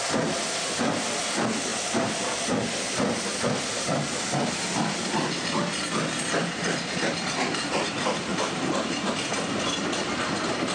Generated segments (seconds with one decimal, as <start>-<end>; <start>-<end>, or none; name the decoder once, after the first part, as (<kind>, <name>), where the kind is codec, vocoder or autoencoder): 1.7-2.5 (vocoder, BigVGAN v2); 8.3-8.9